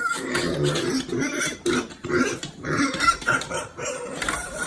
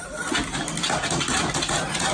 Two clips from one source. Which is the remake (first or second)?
first